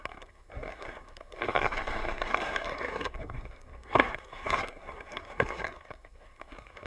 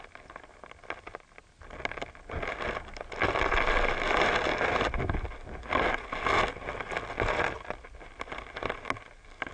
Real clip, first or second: second